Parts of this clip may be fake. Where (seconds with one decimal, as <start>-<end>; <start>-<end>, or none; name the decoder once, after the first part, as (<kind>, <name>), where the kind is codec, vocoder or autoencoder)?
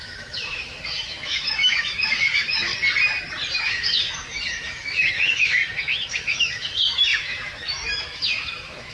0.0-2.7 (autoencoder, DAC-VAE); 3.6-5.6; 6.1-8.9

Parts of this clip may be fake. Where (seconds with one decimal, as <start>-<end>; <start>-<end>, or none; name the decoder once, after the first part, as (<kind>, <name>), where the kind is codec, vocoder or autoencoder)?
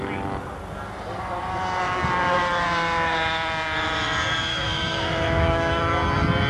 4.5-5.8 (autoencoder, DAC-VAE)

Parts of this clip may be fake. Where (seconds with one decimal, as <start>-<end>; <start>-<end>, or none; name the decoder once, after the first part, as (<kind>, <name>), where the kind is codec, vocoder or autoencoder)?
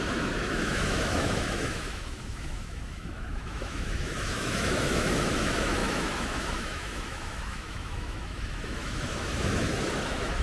0.0-10.4 (autoencoder, DAC-VAE)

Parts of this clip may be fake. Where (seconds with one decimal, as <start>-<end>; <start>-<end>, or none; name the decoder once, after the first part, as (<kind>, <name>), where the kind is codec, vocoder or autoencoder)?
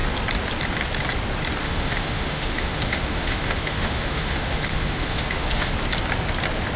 1.6-5.7 (autoencoder, DAC-VAE)